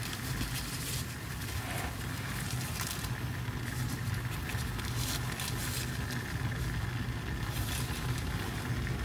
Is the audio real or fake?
real